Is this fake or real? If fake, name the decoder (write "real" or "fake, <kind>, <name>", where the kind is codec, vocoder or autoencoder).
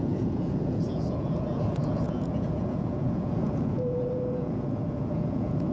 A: fake, vocoder, Vocos